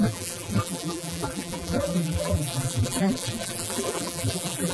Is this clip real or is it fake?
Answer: fake